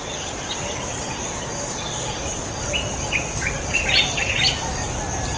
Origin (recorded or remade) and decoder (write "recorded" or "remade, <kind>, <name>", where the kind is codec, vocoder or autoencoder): recorded